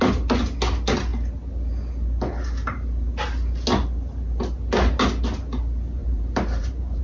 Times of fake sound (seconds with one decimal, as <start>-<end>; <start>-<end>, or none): 6.0-7.0